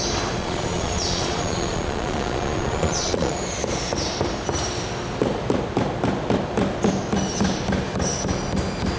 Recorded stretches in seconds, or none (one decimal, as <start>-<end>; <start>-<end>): 0.0-0.4; 3.4-9.0